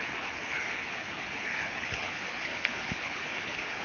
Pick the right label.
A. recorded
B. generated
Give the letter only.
B